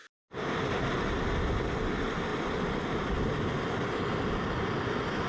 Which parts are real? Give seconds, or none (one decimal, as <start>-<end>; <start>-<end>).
0.0-5.3